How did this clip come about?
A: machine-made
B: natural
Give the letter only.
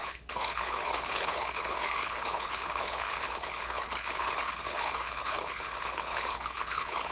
A